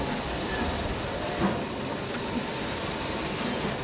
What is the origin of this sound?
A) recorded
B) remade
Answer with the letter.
A